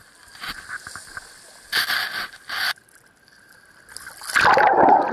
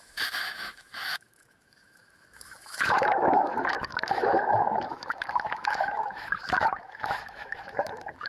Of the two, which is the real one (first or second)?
first